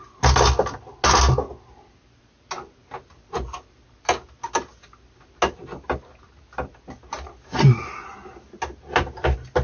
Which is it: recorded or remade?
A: recorded